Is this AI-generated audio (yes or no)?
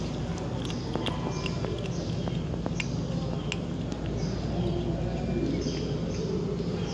no